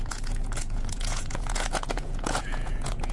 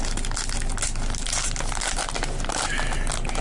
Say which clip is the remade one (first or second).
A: first